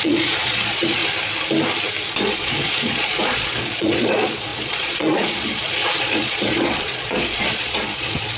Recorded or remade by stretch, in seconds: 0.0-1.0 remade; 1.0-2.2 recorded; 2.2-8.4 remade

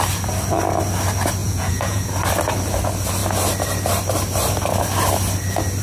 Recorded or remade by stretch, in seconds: 0.0-1.4 recorded; 1.4-2.0 remade; 2.0-5.8 recorded

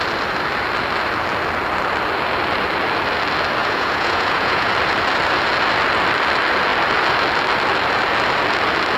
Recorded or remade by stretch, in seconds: 0.0-3.6 recorded; 3.6-4.7 remade; 4.7-9.0 recorded